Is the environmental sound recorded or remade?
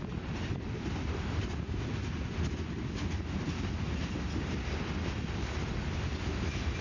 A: recorded